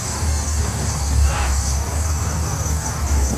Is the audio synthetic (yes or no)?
yes